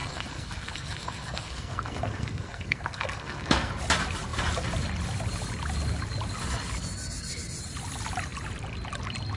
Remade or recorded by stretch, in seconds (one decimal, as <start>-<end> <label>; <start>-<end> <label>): 0.0-3.7 remade; 3.7-9.4 recorded